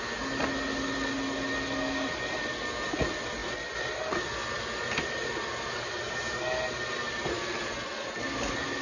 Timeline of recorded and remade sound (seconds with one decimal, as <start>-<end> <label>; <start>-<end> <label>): 0.0-8.8 recorded

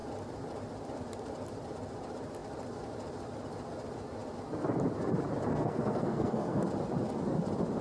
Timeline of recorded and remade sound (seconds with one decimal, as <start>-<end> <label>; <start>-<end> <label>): 0.0-5.5 recorded; 5.5-6.7 remade; 6.7-7.8 recorded